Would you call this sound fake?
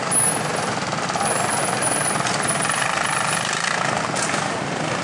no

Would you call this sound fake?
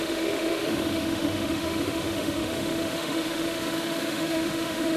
yes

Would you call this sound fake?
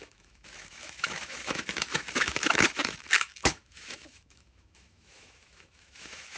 yes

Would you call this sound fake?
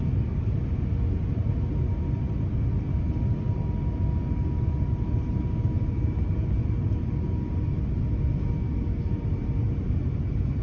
no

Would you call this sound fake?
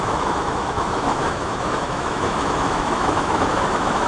yes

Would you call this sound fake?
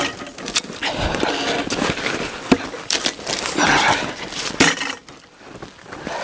no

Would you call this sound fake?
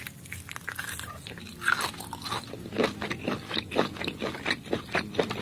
no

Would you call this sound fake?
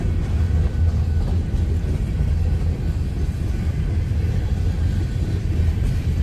no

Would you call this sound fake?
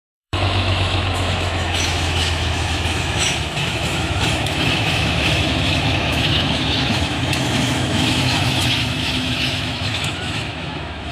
yes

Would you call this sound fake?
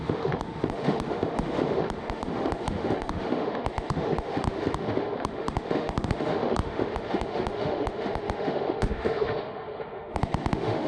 yes